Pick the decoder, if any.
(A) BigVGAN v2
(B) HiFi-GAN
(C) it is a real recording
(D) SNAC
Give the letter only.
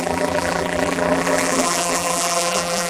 A